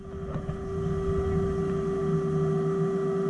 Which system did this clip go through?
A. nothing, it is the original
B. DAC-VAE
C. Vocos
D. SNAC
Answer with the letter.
A